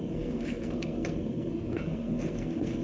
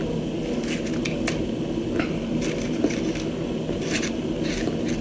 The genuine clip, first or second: second